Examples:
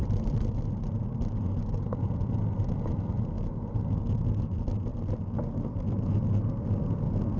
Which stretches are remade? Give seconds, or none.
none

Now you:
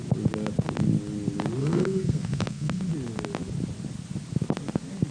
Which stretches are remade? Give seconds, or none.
1.6-2.8 (codec, SNAC)

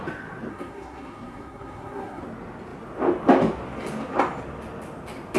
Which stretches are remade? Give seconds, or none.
0.5-2.2 (codec, SNAC)